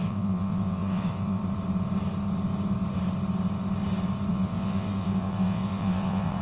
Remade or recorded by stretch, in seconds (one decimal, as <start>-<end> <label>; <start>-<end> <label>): 0.0-1.4 remade; 1.4-4.3 recorded; 4.3-6.4 remade